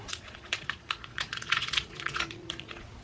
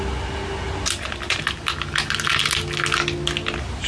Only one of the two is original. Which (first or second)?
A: second